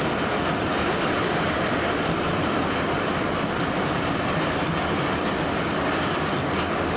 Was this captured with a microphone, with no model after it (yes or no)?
yes